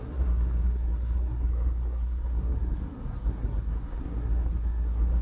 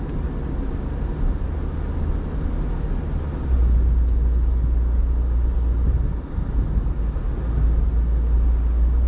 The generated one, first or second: first